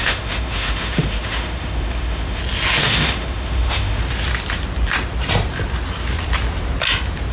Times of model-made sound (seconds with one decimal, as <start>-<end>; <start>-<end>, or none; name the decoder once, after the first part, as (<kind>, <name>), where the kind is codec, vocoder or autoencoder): 0.0-2.4 (autoencoder, DAC-VAE); 2.8-4.0